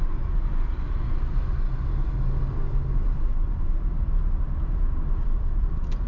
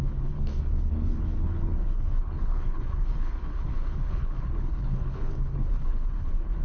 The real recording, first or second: first